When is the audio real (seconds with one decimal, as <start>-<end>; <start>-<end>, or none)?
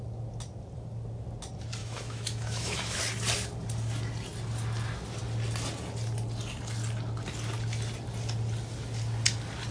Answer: 0.0-1.8; 3.0-9.7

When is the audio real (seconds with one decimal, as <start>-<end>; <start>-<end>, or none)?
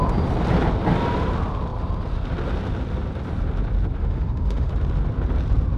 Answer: 0.0-4.0; 4.7-5.8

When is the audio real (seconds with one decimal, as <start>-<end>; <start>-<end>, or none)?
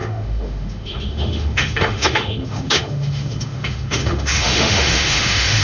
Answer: none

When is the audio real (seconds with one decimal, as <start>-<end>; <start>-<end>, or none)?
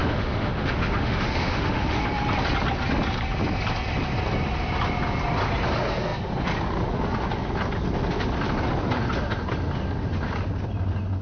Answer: 2.0-11.2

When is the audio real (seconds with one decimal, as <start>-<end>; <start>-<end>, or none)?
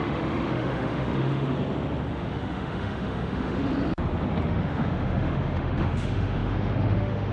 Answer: 1.5-2.1; 3.7-4.3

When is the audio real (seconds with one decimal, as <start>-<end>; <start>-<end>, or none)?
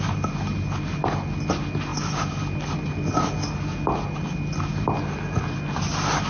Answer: 0.0-6.3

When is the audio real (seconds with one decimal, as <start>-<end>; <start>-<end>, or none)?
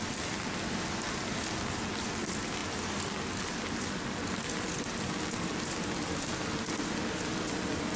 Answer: 0.0-8.0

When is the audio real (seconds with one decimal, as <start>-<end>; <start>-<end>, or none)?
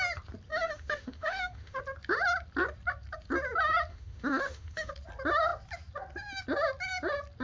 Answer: 0.0-0.5; 1.8-3.9; 4.9-7.4